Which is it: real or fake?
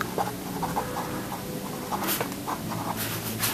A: real